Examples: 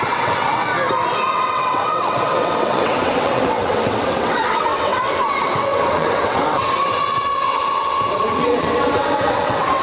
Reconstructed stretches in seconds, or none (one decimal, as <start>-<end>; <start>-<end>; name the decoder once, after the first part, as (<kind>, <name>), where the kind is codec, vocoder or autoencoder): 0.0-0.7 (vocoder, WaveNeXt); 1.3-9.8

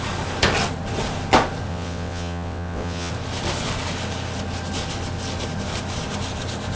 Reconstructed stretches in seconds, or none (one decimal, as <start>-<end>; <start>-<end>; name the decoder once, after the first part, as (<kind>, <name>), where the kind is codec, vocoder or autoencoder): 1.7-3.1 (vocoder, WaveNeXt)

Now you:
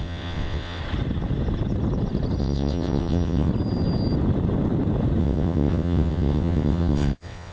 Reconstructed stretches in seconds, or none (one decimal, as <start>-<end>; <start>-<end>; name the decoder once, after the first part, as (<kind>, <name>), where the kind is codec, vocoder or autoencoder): 0.0-0.8 (vocoder, WaveNeXt); 2.4-3.5; 5.2-7.5